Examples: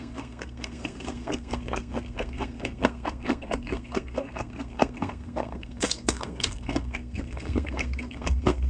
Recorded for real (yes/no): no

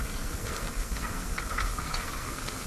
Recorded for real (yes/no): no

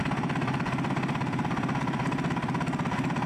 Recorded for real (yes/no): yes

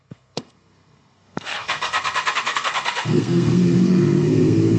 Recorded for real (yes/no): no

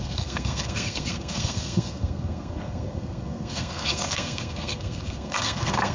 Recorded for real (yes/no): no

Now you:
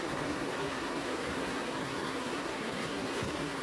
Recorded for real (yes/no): no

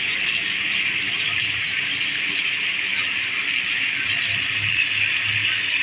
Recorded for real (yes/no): yes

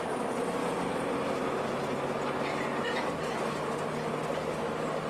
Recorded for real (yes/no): yes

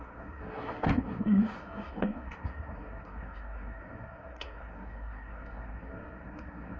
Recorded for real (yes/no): no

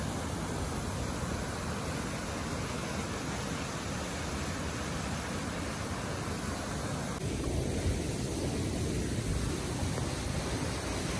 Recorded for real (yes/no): yes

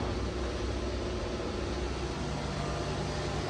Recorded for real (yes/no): yes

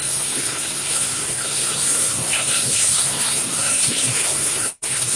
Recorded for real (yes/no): no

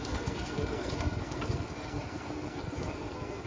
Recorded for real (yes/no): no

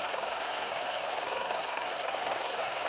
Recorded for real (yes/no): no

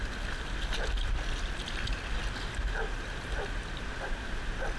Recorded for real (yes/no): yes